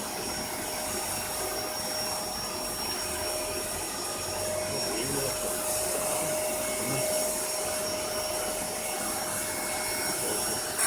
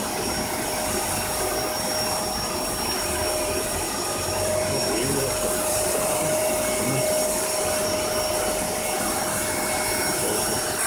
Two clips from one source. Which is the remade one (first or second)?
second